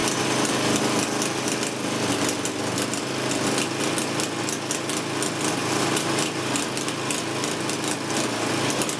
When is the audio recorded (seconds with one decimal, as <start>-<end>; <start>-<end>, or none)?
0.0-5.6; 6.6-9.0